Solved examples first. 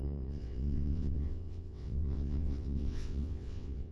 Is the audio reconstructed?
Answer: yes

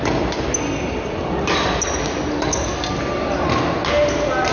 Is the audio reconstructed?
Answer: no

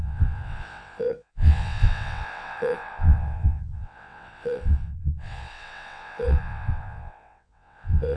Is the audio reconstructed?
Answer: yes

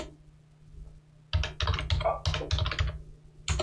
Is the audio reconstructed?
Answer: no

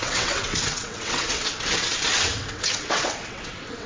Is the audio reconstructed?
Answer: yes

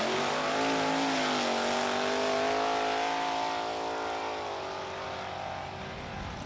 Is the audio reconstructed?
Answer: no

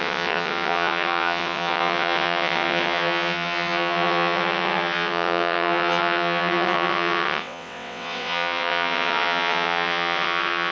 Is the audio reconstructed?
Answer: yes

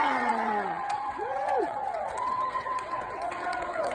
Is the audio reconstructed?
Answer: yes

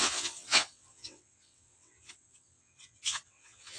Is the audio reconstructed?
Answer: yes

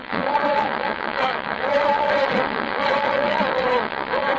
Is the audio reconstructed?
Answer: yes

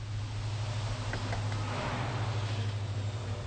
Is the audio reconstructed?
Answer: no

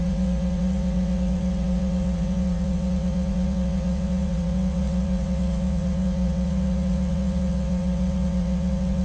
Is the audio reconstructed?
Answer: yes